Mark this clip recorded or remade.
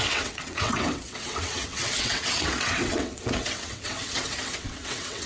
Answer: remade